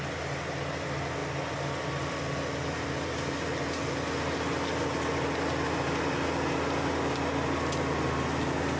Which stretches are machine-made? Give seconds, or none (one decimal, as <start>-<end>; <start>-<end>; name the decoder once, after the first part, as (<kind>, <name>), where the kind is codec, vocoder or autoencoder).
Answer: none

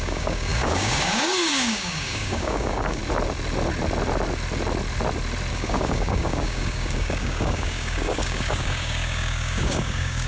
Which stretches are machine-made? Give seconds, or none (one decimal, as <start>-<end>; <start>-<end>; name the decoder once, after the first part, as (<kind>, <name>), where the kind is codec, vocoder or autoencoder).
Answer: 0.0-3.0 (codec, DAC); 5.5-10.3

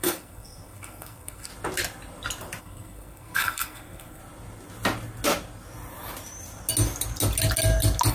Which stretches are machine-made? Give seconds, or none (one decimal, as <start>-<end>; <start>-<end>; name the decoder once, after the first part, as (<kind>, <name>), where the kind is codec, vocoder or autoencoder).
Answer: 0.0-1.5 (codec, SNAC); 2.6-4.2

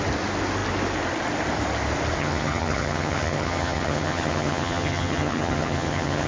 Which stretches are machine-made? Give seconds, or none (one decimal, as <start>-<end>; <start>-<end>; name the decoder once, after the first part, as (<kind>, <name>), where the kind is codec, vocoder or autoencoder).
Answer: 2.2-6.3 (vocoder, HiFi-GAN)

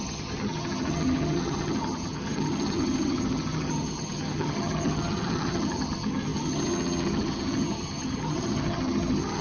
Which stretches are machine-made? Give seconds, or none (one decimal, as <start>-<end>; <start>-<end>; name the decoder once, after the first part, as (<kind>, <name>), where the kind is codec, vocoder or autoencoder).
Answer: 0.0-9.4 (vocoder, HiFi-GAN)

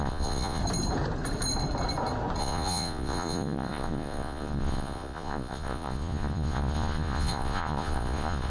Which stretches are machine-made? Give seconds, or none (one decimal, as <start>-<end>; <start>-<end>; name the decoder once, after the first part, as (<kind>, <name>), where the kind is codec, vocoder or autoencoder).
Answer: 0.0-0.6 (vocoder, Vocos); 2.4-8.5

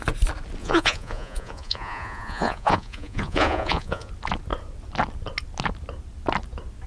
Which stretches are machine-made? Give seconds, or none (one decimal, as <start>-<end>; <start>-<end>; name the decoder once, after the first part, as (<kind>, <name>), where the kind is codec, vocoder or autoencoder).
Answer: 0.6-4.1 (vocoder, Vocos)